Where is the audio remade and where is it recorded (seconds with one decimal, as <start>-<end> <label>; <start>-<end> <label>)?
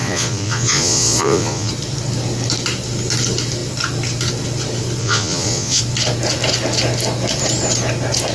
0.0-1.7 remade; 1.7-5.0 recorded; 5.0-5.8 remade; 5.8-8.3 recorded